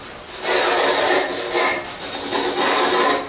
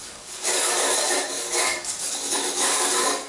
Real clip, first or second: first